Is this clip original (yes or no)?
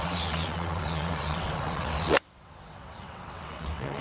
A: no